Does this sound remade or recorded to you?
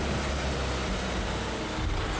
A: recorded